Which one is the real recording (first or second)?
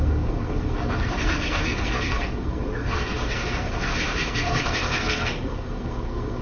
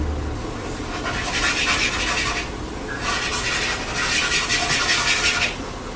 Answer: second